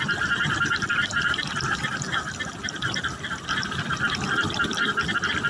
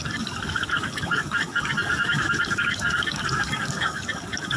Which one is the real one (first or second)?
first